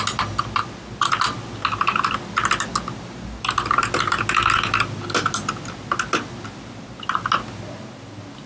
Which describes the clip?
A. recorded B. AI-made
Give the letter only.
A